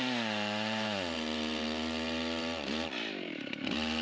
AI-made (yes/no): yes